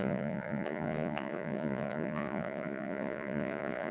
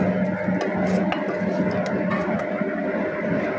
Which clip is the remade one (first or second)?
first